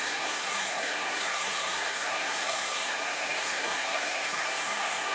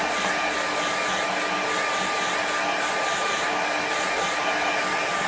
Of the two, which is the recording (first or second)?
second